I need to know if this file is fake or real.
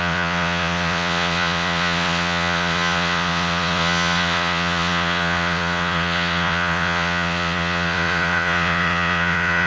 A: fake